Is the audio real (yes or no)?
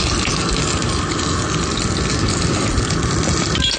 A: yes